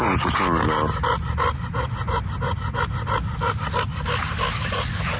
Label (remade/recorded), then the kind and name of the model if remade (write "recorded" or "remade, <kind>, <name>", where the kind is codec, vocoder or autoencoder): recorded